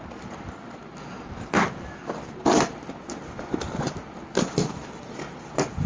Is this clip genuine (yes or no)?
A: yes